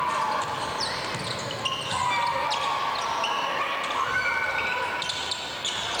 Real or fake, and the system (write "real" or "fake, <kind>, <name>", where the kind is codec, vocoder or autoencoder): real